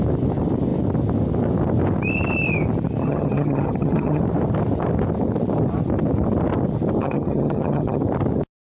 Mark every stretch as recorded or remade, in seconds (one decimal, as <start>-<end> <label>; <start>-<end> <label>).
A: 0.0-3.0 recorded; 3.0-4.2 remade; 4.2-7.0 recorded; 7.0-8.0 remade; 8.0-8.6 recorded